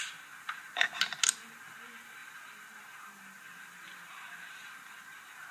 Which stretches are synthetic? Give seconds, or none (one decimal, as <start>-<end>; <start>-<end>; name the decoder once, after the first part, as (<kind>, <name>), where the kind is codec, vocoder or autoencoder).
none